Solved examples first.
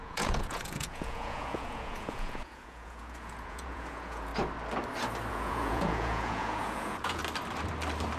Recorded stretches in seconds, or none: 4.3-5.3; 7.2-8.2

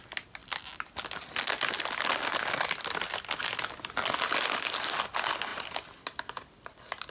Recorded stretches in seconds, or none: 0.0-7.1

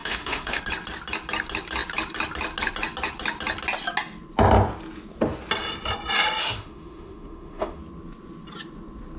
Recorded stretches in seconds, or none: 0.6-6.4; 7.8-9.2